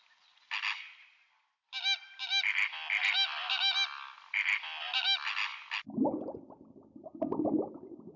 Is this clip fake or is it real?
real